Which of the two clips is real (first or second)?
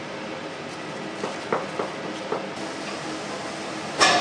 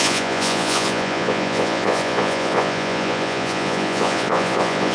first